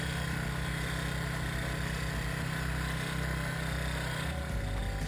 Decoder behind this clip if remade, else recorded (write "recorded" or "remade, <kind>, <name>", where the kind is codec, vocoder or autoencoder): recorded